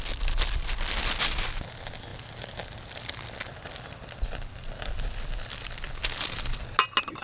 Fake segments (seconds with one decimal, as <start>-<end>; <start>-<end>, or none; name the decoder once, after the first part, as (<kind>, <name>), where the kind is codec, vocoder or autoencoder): none